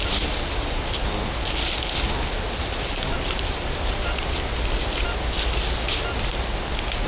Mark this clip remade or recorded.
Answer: recorded